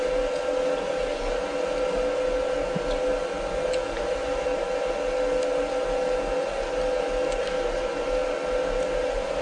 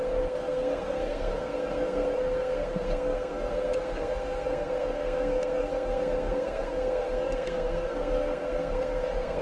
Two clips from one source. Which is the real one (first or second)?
first